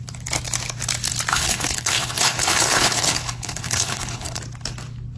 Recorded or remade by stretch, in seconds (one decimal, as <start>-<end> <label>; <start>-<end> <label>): 0.0-1.3 recorded; 1.3-4.4 remade; 4.4-5.2 recorded